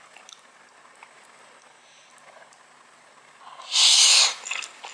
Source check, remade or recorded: recorded